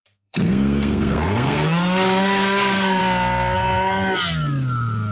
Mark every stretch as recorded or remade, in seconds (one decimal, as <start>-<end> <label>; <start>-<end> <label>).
0.0-3.0 remade; 3.0-5.1 recorded